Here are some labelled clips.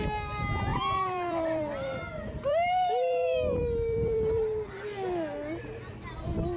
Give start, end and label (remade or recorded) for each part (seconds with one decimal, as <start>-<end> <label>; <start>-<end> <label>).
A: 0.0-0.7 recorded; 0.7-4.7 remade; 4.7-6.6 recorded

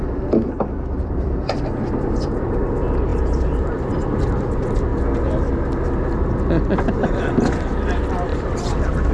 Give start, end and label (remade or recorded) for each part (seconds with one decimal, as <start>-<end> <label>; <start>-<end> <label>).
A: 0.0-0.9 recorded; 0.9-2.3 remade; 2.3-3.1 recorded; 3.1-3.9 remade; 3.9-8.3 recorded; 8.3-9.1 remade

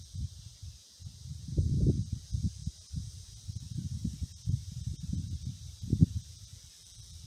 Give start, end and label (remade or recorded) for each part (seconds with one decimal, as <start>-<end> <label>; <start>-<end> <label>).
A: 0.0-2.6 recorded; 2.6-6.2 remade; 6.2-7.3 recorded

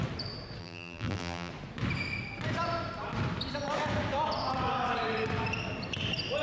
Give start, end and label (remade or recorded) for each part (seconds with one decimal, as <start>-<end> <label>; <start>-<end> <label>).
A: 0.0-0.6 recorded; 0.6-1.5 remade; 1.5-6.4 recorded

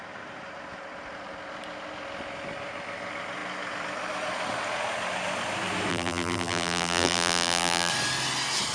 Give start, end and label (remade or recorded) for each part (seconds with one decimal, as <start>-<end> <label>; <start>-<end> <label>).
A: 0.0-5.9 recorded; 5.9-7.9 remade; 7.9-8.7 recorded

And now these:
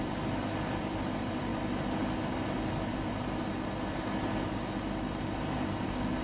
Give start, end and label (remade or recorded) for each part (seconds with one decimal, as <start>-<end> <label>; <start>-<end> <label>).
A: 0.0-1.5 remade; 1.5-5.2 recorded; 5.2-6.2 remade

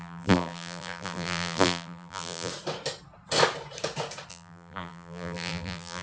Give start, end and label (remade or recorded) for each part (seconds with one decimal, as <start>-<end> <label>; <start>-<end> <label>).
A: 0.0-2.5 remade; 2.5-4.3 recorded; 4.3-6.0 remade

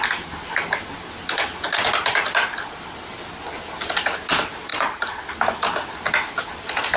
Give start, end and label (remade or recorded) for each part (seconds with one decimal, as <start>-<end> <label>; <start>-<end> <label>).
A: 0.0-7.0 recorded